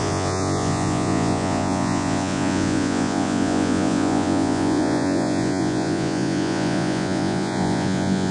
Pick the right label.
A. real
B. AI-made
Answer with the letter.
B